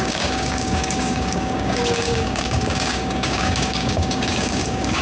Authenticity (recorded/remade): remade